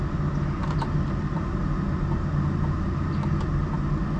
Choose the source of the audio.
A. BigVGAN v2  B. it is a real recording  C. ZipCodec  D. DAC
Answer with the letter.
B